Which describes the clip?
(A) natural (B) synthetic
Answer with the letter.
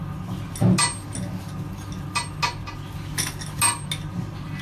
A